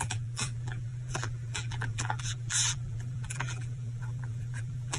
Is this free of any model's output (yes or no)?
no